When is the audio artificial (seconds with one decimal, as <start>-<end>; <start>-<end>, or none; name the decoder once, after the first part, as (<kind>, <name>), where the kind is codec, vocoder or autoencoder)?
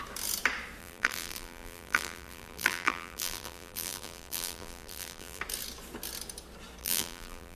0.8-5.4 (vocoder, BigVGAN v2); 6.8-7.6